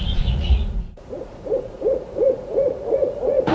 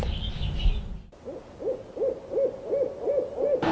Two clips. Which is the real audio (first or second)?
second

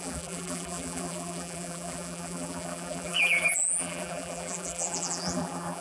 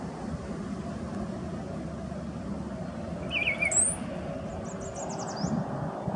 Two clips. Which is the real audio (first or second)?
second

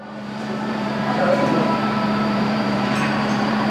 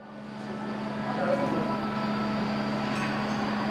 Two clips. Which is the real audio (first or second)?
second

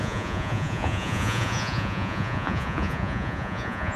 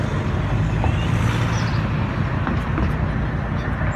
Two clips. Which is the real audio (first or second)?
second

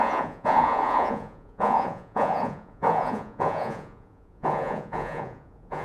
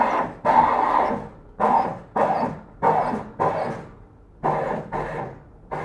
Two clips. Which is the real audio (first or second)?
second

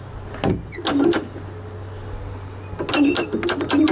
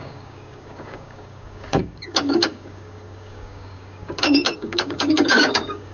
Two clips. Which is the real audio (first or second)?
first